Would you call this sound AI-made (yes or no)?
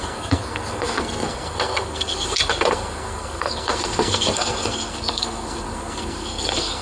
yes